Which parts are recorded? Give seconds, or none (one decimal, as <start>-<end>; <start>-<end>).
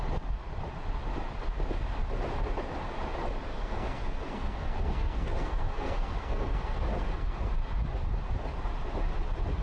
0.0-3.5; 7.5-9.6